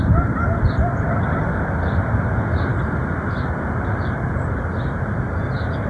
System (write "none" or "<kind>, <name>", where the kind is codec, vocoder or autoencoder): none